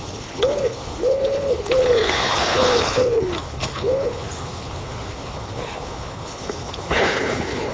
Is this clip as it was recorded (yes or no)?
no